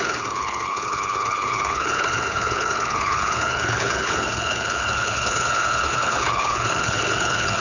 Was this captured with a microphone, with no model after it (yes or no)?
no